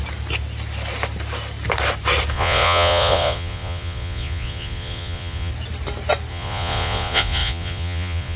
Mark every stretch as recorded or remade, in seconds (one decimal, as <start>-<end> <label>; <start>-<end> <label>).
0.0-2.3 recorded; 2.3-5.5 remade; 5.5-6.3 recorded; 6.3-8.4 remade